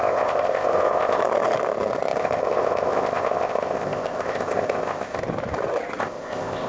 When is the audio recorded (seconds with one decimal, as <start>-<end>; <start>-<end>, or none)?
1.2-2.2; 5.2-6.0